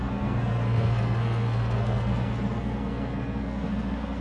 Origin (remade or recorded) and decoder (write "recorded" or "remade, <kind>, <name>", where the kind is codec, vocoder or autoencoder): remade, codec, SNAC